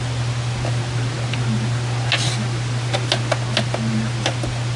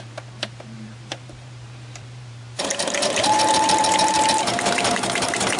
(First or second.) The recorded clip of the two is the first